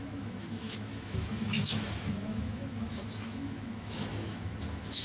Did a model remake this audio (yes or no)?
yes